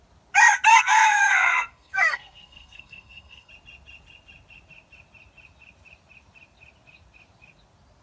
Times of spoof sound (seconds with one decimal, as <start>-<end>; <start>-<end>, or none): 0.7-3.5